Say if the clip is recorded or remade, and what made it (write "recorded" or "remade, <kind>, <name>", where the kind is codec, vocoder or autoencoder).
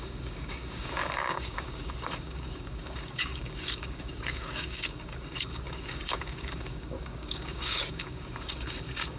remade, codec, DAC